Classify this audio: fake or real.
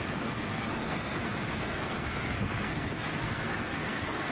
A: fake